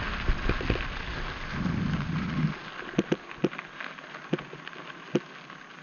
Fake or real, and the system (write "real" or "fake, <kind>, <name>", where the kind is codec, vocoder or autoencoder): real